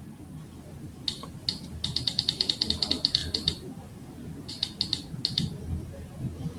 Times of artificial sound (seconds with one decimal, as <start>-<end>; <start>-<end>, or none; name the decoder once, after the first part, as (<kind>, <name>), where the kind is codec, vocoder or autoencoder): none

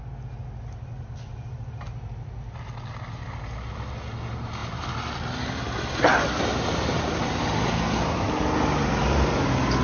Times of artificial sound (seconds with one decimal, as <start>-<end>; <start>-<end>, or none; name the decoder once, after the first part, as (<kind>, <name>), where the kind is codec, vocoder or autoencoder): none